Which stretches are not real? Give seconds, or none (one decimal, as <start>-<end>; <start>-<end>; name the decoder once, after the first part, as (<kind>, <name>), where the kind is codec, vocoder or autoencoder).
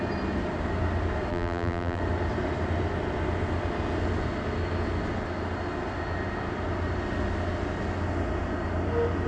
1.3-2.0 (vocoder, BigVGAN v2)